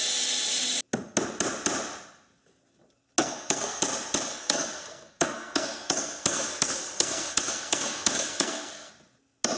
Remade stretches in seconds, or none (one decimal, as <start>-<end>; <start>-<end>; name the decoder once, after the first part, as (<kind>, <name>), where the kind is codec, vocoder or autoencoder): 3.2-3.8 (codec, SNAC); 4.3-8.9